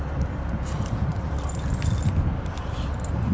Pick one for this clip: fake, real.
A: real